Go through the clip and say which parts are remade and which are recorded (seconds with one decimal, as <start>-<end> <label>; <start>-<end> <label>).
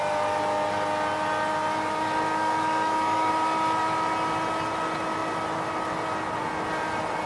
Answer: 0.0-2.3 recorded; 2.3-3.3 remade; 3.3-7.3 recorded